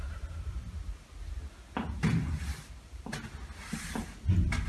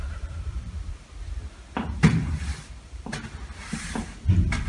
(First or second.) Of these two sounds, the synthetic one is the second